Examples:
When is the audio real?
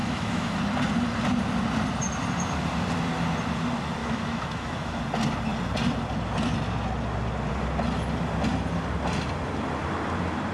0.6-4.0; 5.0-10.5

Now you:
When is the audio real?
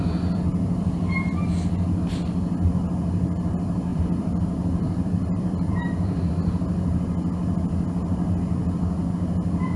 0.0-3.9; 6.3-9.8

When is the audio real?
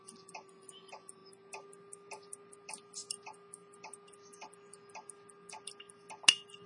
0.0-6.7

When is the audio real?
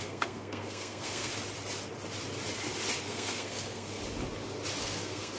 1.3-3.0; 4.0-4.8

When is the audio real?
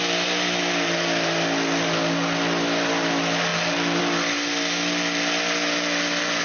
0.0-6.4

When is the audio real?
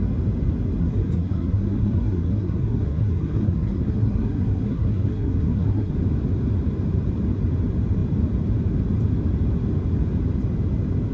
0.0-0.8; 5.9-11.1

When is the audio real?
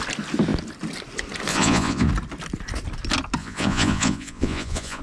0.0-1.5; 2.1-3.4